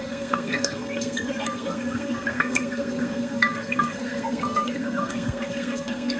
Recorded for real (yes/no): no